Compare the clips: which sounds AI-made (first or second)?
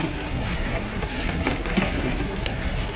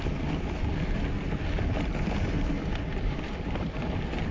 first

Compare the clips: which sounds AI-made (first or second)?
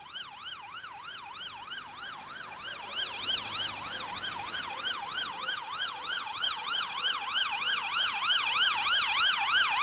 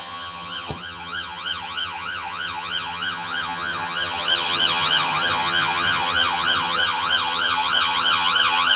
second